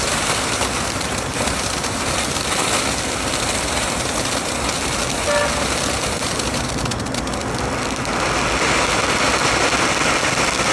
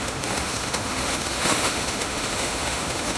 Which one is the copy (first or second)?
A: second